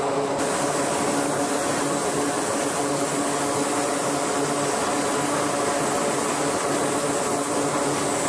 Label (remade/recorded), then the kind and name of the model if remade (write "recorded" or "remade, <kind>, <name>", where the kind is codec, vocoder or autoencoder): recorded